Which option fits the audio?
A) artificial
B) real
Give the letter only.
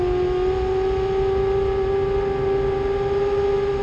B